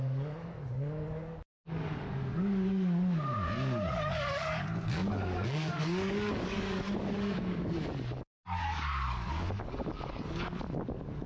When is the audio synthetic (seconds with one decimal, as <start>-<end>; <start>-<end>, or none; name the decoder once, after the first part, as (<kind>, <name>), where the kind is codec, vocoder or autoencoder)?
0.0-11.3 (codec, DAC)